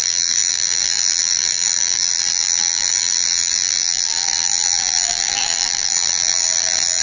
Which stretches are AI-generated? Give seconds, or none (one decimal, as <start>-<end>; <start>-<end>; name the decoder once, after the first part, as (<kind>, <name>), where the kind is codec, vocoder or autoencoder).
0.0-7.0 (vocoder, BigVGAN v2)